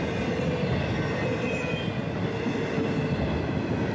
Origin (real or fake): real